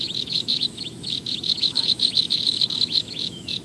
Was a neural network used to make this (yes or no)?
yes